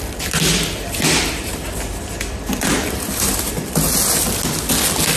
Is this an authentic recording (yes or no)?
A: yes